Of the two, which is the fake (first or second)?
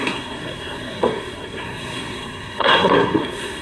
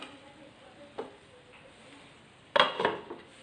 first